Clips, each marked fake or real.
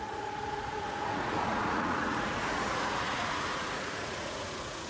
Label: fake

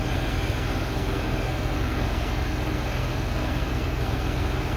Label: fake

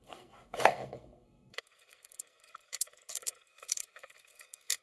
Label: fake